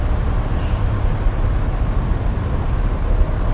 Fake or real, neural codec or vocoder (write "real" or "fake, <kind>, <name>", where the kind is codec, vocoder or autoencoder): real